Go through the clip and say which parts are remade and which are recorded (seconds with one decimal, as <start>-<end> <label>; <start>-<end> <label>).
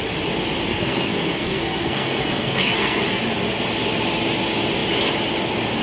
0.0-0.7 recorded; 0.7-3.0 remade; 3.0-5.8 recorded